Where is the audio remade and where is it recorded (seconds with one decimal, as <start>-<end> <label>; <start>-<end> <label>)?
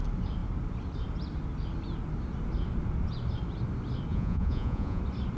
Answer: 0.0-4.1 recorded; 4.1-5.0 remade; 5.0-5.4 recorded